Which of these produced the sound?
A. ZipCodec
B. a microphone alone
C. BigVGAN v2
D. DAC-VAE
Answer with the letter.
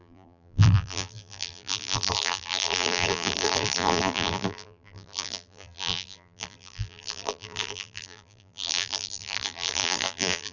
C